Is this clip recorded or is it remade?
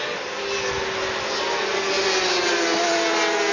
recorded